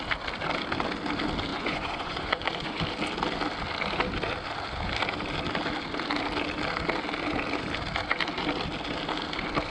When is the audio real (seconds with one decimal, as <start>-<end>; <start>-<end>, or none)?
0.0-1.5; 2.8-9.7